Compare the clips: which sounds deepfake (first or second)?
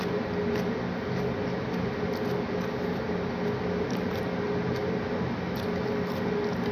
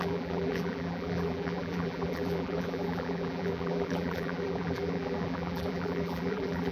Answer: second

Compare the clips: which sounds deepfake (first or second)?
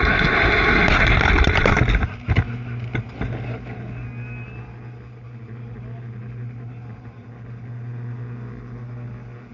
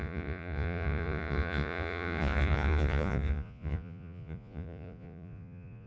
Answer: second